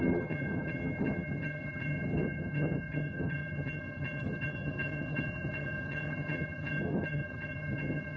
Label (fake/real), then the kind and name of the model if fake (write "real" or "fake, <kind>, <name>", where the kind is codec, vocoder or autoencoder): fake, vocoder, HiFi-GAN